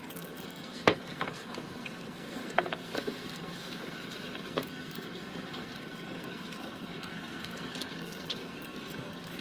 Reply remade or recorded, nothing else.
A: remade